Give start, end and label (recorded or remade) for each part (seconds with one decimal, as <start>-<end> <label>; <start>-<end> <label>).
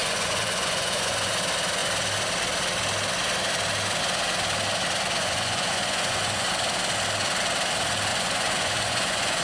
0.0-1.3 remade; 1.3-5.2 recorded; 5.2-6.5 remade; 6.5-8.1 recorded; 8.1-9.4 remade